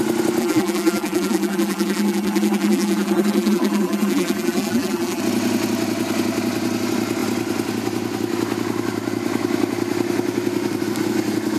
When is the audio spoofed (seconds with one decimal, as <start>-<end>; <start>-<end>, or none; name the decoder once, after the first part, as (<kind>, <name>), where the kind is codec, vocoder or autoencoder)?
0.4-5.2 (vocoder, BigVGAN v2)